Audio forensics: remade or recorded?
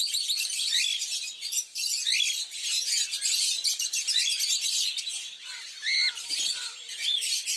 recorded